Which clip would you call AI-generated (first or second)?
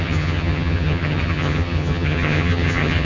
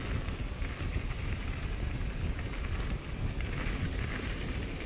first